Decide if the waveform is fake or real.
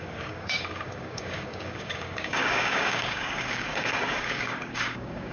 fake